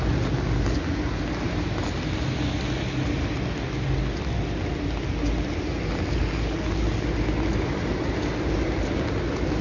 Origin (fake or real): real